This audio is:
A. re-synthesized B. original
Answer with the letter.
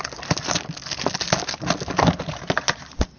B